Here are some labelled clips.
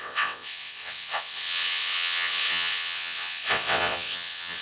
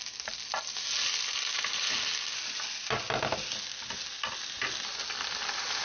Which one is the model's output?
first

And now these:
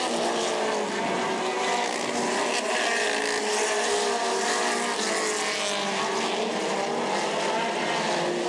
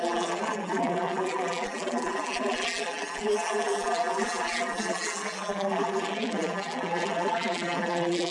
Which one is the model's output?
second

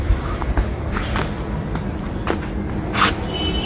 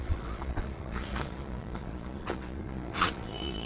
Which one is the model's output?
second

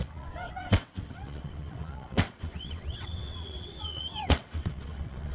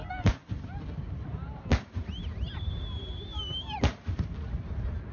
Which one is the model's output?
first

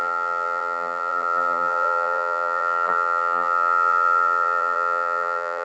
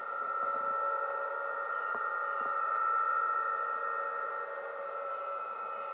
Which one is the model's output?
first